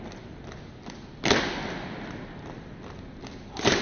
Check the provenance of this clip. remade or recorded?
recorded